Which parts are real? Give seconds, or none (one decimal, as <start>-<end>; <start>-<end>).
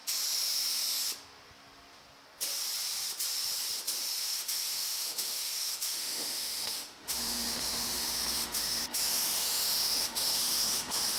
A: 0.0-4.2